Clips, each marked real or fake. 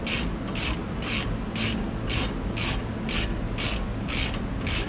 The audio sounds real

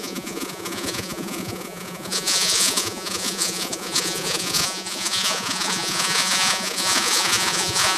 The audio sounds fake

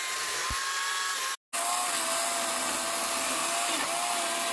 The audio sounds real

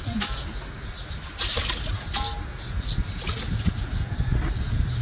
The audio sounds real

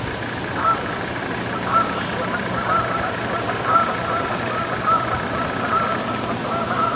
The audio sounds real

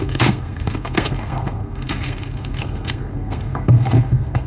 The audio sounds fake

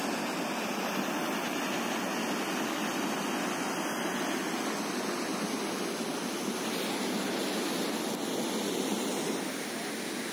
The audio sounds real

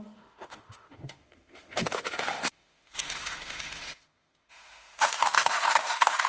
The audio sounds fake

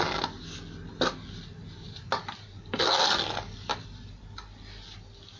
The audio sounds real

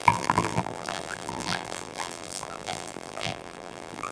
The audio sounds fake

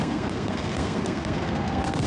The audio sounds fake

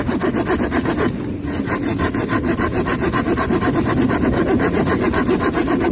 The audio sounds real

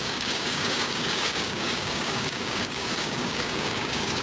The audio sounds fake